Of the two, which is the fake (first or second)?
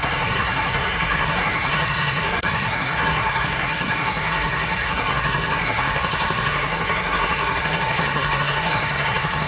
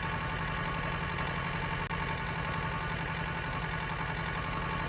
first